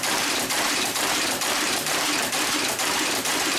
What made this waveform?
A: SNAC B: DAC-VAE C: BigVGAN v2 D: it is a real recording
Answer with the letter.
C